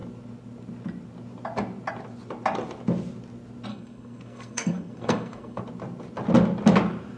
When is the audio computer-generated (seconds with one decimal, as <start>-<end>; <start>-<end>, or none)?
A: 3.7-5.6